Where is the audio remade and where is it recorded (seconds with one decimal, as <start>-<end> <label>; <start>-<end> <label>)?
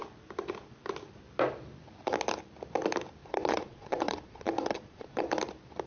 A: 0.0-3.2 recorded; 3.2-5.3 remade; 5.3-5.9 recorded